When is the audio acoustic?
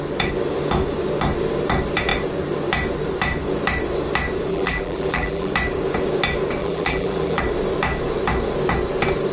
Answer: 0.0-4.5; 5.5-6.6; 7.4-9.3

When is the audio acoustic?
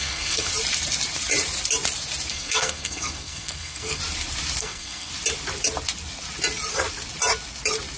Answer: 0.5-2.3; 4.0-4.6; 5.1-8.0